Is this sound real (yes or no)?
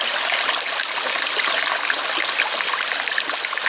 yes